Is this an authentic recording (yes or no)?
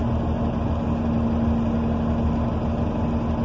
yes